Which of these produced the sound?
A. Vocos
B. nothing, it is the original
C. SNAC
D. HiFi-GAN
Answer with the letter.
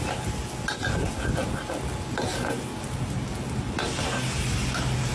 B